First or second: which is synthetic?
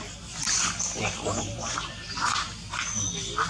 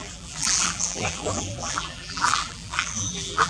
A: second